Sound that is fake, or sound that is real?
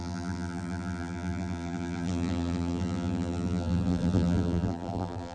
fake